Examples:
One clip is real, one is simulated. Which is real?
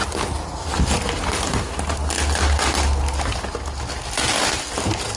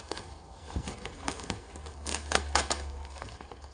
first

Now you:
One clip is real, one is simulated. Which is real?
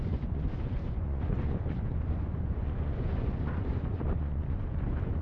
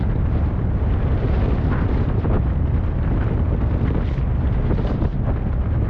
second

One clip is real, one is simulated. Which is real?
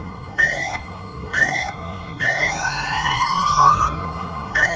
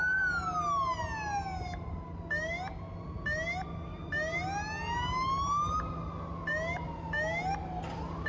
second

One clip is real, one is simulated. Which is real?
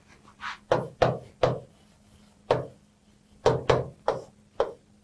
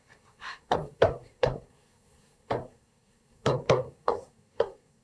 first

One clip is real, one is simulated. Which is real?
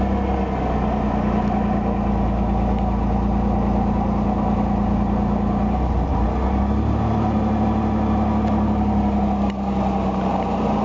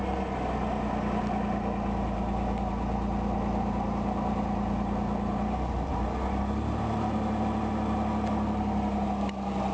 first